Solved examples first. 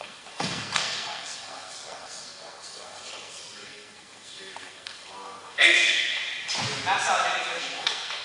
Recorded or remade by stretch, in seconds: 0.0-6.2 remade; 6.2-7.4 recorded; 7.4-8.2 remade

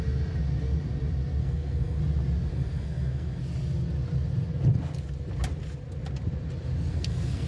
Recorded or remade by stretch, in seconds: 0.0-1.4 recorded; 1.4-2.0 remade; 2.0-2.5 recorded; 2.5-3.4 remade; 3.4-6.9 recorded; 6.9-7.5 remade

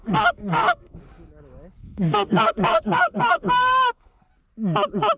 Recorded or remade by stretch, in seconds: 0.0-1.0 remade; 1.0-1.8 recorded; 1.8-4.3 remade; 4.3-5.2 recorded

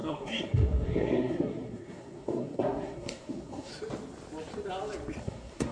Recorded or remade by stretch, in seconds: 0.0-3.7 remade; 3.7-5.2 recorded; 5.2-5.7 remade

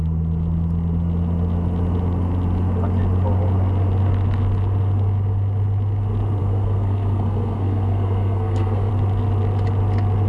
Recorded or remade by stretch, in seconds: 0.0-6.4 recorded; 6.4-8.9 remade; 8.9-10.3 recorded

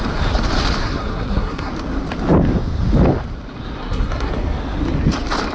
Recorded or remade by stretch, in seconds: 0.0-0.8 recorded; 0.8-1.7 remade; 1.7-3.8 recorded; 3.8-4.3 remade; 4.3-5.5 recorded